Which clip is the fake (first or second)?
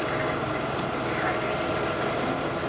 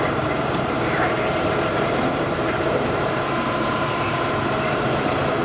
second